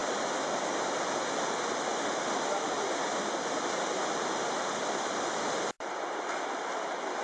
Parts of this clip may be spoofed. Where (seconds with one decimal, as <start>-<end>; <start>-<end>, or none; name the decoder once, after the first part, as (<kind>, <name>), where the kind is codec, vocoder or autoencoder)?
none